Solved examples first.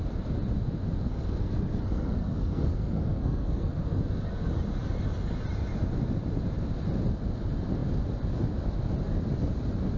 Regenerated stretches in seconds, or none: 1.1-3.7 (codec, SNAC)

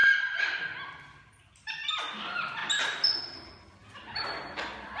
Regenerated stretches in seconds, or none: none

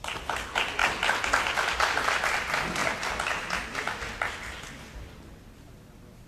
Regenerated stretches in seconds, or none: none

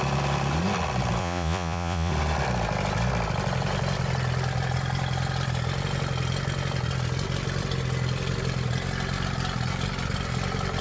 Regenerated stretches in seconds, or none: 1.2-2.1 (vocoder, Vocos)